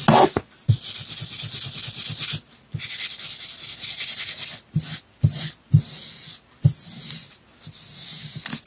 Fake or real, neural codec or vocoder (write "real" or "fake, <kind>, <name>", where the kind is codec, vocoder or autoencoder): real